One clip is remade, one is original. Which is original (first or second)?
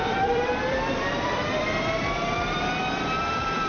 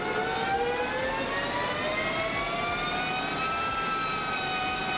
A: second